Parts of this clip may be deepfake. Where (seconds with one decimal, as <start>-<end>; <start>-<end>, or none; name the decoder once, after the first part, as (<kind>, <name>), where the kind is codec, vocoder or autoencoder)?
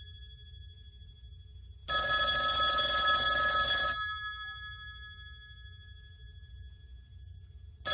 none